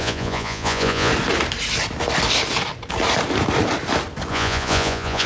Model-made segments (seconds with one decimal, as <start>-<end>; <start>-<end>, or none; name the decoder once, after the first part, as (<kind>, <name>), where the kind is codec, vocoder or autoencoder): 0.0-1.1 (vocoder, Vocos); 4.3-5.3